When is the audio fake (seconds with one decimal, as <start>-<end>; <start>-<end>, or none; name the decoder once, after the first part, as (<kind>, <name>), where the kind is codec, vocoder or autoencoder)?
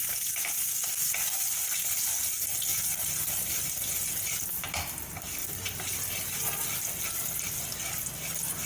none